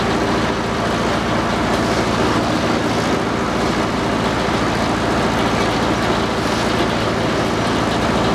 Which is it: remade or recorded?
recorded